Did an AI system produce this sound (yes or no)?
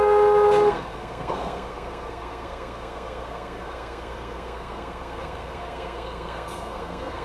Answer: yes